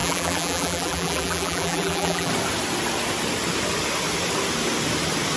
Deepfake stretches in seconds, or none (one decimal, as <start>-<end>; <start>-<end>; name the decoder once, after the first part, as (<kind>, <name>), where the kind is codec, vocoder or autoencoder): 0.0-2.3 (vocoder, BigVGAN v2)

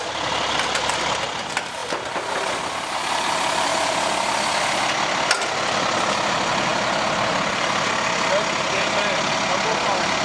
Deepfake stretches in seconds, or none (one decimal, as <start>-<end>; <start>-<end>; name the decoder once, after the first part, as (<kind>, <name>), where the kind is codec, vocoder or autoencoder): none

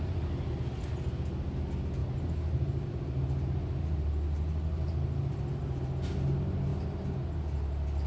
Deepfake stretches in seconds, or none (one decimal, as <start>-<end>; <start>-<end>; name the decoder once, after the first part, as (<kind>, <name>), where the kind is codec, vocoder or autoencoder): none

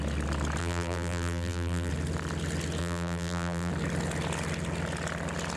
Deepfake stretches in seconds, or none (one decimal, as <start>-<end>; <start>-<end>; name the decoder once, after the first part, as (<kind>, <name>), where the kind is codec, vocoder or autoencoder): 0.6-1.9 (vocoder, BigVGAN v2); 2.8-3.7

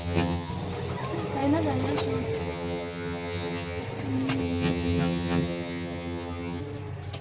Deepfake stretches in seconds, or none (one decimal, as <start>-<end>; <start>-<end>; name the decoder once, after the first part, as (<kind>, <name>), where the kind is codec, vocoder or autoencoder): 0.0-0.5 (vocoder, HiFi-GAN); 2.4-3.8; 4.4-6.6

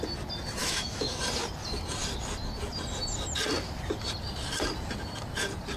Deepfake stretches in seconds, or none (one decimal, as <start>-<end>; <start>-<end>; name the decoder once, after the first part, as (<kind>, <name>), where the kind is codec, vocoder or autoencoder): 0.6-1.2 (autoencoder, DAC-VAE)